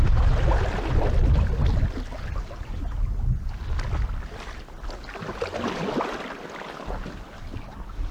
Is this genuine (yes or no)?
yes